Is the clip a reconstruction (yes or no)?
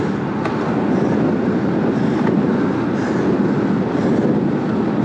no